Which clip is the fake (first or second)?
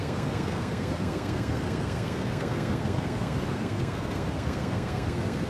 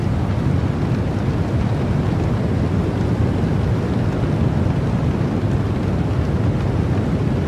first